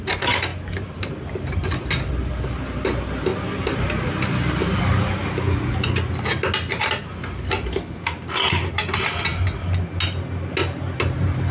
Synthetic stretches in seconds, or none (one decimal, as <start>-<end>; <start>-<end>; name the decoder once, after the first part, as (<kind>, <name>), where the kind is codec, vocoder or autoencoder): 0.5-1.5 (vocoder, BigVGAN v2)

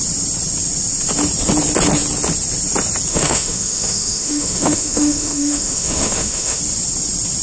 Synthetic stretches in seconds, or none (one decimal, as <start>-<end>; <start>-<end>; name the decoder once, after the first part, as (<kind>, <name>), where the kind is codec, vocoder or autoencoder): 3.1-6.6 (autoencoder, DAC-VAE)